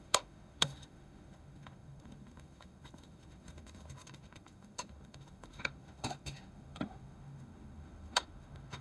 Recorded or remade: remade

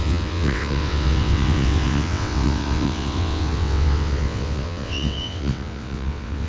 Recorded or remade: remade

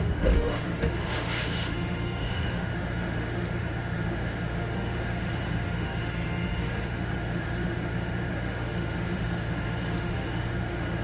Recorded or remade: remade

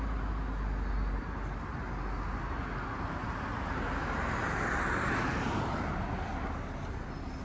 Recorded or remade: recorded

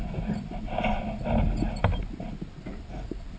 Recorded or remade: recorded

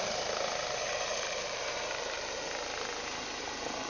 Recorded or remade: recorded